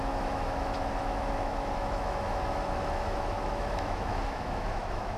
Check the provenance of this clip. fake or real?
fake